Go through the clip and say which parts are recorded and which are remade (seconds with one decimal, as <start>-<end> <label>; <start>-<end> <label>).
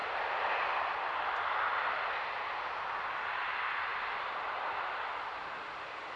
0.0-6.2 recorded